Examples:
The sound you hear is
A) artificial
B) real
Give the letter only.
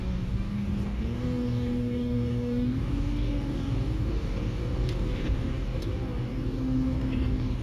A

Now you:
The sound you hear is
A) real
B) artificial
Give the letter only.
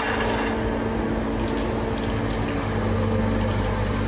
A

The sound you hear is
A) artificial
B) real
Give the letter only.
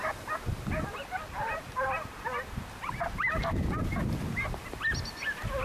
B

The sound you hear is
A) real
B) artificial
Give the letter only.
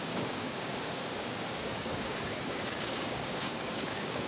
B